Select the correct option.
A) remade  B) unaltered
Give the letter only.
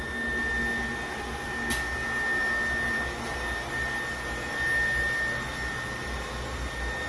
B